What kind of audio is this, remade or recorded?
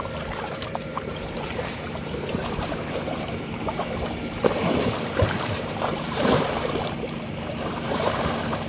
remade